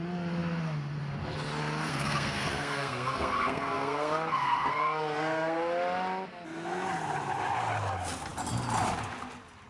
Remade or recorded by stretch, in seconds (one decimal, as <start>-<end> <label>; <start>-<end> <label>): 0.0-1.9 recorded; 1.9-5.6 remade; 5.6-9.7 recorded